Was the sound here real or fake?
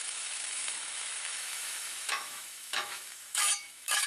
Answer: fake